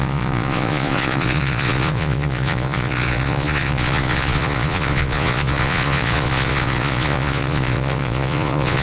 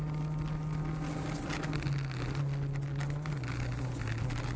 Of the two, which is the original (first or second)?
second